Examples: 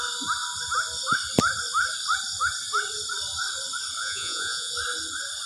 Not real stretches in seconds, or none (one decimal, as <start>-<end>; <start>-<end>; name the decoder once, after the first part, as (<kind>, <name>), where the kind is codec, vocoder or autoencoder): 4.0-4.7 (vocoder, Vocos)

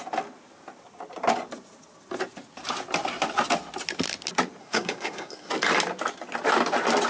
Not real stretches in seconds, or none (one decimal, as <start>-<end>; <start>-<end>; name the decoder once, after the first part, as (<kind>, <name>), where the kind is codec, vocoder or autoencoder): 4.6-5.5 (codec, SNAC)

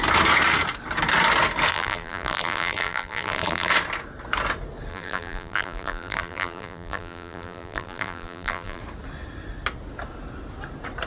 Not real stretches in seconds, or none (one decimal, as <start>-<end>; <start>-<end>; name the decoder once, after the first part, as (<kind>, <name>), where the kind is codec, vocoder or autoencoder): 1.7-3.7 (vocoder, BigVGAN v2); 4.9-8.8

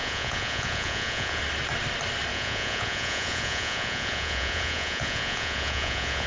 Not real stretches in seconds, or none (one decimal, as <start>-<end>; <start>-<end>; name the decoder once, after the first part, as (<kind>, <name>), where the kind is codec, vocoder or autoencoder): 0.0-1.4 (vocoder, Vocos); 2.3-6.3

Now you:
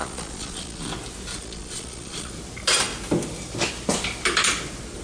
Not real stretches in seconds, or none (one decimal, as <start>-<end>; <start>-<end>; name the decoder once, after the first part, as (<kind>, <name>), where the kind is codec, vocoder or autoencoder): 0.0-0.9 (vocoder, Vocos); 1.3-2.3

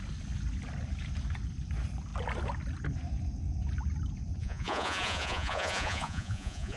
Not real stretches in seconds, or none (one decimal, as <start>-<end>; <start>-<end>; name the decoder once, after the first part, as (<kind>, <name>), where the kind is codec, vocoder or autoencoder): 4.4-6.8 (vocoder, Vocos)

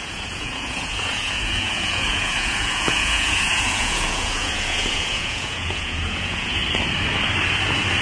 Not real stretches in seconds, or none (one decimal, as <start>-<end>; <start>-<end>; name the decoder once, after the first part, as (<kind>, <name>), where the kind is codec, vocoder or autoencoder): 0.0-6.6 (vocoder, Vocos)

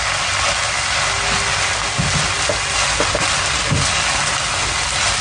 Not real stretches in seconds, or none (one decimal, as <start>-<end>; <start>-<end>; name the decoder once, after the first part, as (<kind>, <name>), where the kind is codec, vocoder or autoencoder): none